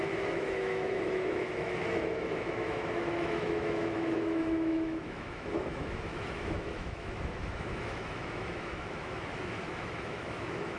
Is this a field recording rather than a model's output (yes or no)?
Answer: no